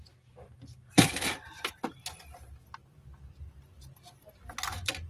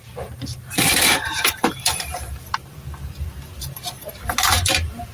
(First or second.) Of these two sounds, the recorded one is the first